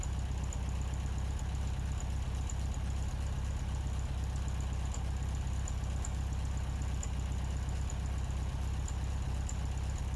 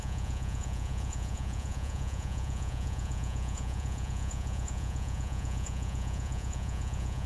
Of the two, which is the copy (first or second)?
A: second